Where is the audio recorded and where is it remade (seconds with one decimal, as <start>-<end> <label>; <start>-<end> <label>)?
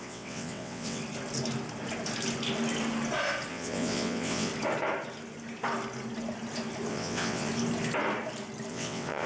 0.0-1.0 remade; 1.0-3.5 recorded; 3.5-4.5 remade; 4.5-6.9 recorded; 6.9-7.5 remade; 7.5-8.7 recorded; 8.7-9.3 remade